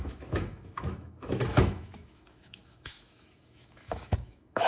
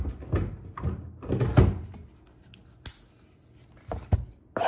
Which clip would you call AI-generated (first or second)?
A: first